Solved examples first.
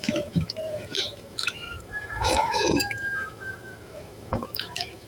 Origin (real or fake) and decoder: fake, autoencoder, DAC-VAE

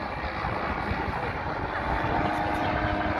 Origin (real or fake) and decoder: real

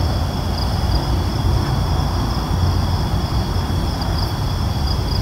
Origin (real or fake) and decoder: real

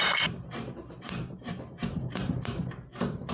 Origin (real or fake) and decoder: fake, vocoder, BigVGAN v2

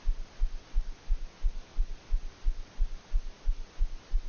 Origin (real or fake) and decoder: real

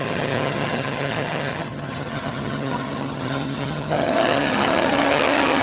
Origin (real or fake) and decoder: fake, vocoder, HiFi-GAN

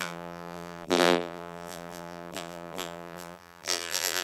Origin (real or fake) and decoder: fake, vocoder, BigVGAN v2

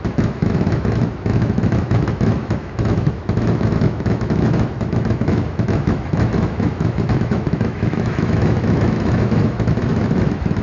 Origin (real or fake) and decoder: fake, autoencoder, DAC-VAE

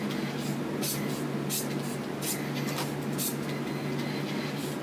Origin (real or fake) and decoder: real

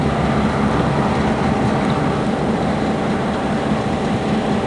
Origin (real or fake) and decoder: real